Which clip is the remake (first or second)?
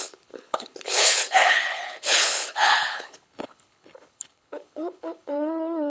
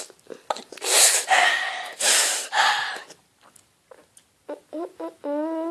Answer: first